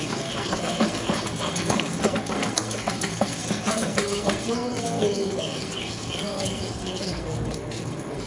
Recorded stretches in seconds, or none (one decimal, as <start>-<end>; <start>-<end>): none